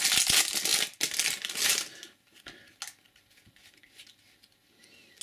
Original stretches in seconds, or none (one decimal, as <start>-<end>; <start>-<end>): 0.0-5.2